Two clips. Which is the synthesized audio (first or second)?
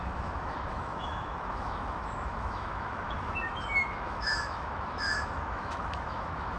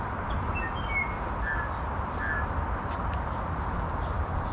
first